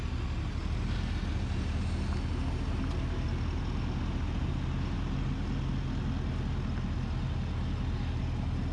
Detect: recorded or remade recorded